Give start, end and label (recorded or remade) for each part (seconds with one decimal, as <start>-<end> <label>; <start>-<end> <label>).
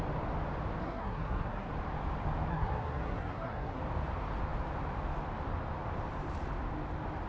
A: 0.0-0.8 recorded; 0.8-1.7 remade; 1.7-2.5 recorded; 2.5-3.8 remade; 3.8-7.3 recorded